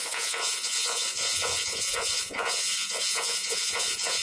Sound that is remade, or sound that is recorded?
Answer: remade